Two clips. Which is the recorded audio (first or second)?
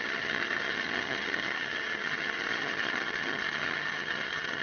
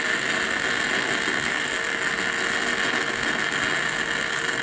second